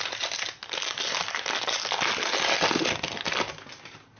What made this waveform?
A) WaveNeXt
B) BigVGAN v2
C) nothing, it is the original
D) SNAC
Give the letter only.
C